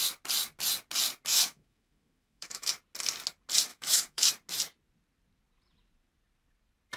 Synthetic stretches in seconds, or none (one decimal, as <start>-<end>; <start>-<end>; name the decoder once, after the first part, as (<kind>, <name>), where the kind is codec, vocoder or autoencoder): 1.3-2.7 (autoencoder, DAC-VAE); 3.7-4.3